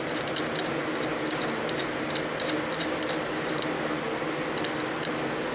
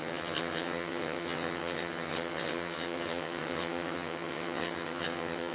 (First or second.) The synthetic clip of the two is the second